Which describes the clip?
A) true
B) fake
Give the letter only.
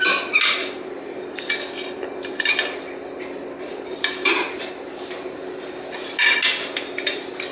A